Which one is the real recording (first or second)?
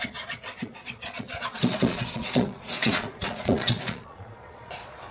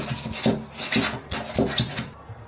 second